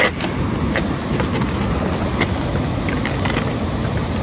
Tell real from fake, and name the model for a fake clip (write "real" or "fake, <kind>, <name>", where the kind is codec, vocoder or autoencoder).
real